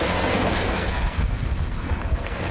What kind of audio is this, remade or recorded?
remade